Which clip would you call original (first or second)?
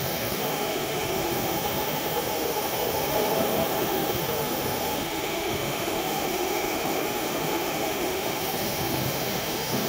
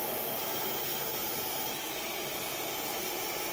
second